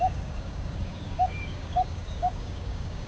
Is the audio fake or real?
fake